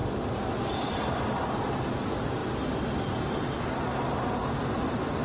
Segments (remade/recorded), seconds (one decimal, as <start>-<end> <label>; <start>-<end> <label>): 0.0-5.2 recorded